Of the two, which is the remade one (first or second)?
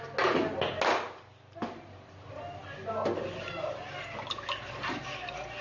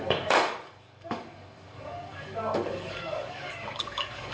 second